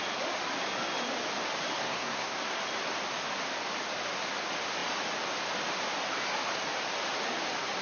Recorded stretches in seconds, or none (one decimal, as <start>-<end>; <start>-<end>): 0.0-1.8; 2.6-7.8